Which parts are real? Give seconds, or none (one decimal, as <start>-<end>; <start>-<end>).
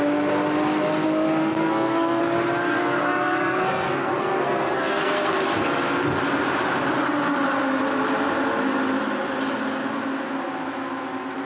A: 0.0-1.4; 2.2-2.6; 5.3-11.5